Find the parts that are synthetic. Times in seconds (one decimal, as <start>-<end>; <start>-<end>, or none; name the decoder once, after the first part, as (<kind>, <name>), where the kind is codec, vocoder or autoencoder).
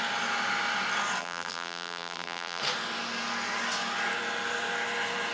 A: 1.2-2.6 (vocoder, BigVGAN v2)